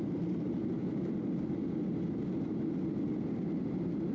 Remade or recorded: recorded